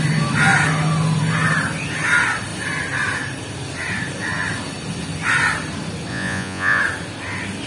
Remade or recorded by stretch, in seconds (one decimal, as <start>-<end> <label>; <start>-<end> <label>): 0.0-6.1 recorded; 6.1-6.8 remade; 6.8-7.7 recorded